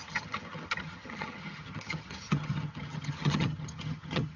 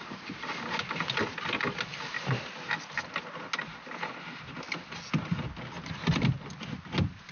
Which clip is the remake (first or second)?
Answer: first